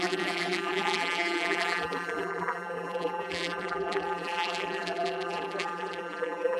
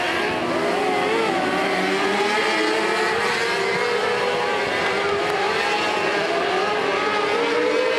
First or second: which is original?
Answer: second